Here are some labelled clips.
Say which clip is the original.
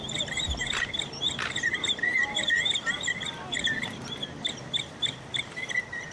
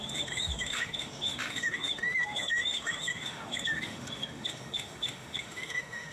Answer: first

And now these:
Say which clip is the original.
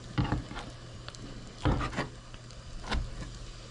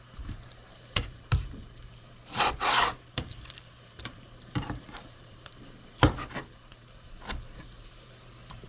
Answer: first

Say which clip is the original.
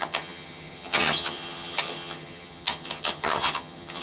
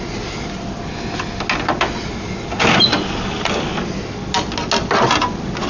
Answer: second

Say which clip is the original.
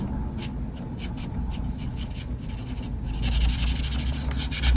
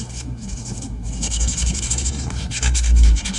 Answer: first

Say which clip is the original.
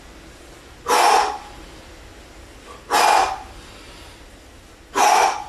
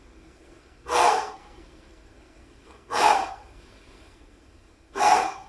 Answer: first